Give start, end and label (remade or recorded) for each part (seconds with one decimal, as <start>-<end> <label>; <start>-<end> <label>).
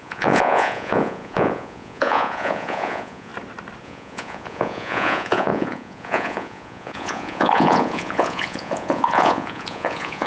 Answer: 0.0-3.3 remade; 3.3-3.8 recorded; 3.8-10.3 remade